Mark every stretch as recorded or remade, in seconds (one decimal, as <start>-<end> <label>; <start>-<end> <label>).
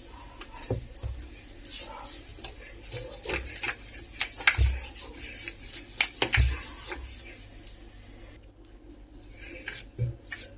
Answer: 0.0-10.6 recorded